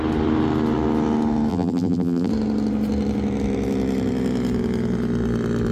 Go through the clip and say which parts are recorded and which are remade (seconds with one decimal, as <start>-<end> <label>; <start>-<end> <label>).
0.0-1.5 recorded; 1.5-2.3 remade; 2.3-5.7 recorded